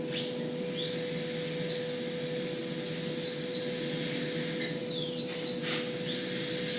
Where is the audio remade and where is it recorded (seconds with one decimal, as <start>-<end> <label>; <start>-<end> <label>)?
0.0-6.8 recorded